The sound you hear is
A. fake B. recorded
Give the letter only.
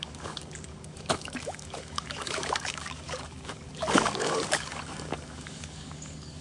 A